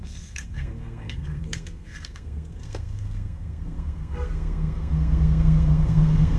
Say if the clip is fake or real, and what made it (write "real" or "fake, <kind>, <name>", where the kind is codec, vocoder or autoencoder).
fake, codec, SNAC